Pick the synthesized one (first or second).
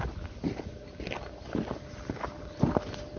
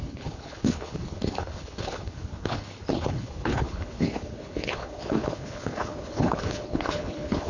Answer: second